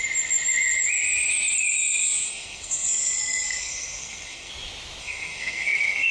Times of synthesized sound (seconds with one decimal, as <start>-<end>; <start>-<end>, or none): 2.0-4.5; 5.0-6.1